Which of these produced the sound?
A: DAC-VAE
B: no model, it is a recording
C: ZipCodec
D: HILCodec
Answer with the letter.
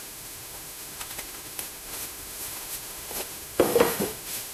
A